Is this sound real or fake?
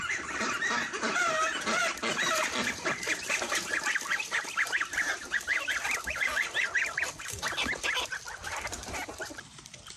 fake